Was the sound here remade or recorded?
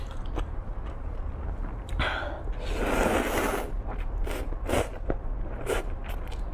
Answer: recorded